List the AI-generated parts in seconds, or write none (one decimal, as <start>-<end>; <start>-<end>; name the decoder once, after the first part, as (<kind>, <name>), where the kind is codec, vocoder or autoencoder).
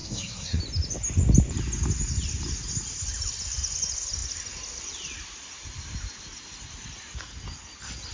0.0-0.6 (codec, SNAC)